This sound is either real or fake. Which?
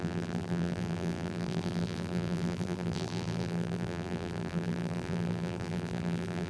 fake